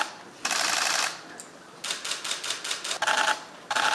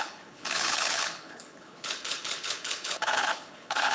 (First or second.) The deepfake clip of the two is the second